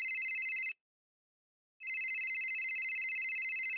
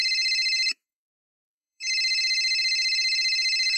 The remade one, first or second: second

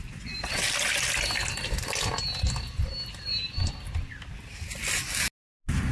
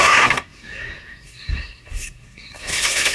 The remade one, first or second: second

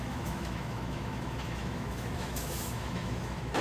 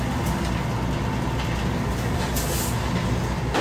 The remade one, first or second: first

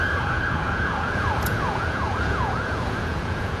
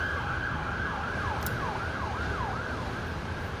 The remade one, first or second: first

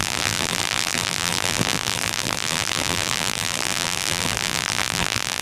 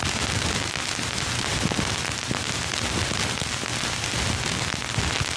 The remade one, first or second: first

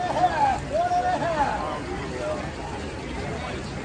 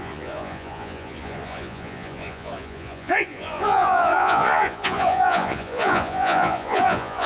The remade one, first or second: second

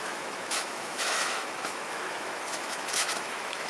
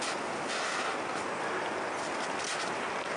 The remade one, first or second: first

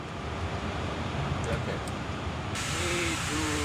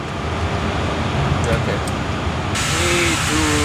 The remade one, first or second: first